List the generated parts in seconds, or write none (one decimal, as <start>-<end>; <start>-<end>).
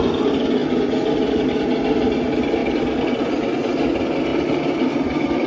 2.6-3.3